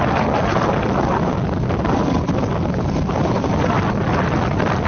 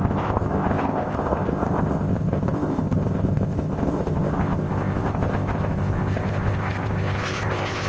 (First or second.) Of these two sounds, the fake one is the second